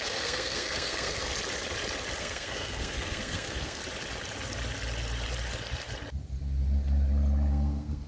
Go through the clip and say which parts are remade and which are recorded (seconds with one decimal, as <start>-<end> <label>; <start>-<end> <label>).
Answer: 0.0-1.3 remade; 1.3-2.2 recorded; 2.2-3.8 remade; 3.8-7.5 recorded; 7.5-8.1 remade